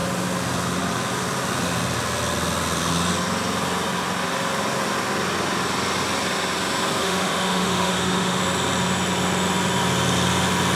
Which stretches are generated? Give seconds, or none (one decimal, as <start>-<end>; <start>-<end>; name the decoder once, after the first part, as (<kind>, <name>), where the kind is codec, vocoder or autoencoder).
7.0-8.4 (autoencoder, DAC-VAE)